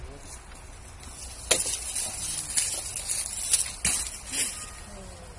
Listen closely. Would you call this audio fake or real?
real